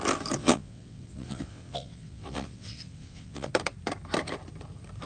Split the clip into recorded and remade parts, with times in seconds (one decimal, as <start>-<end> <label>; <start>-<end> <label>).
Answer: 0.0-0.4 recorded; 0.4-3.5 remade; 3.5-5.1 recorded